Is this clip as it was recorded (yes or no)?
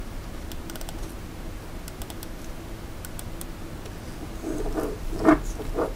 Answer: yes